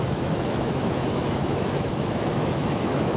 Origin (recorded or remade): remade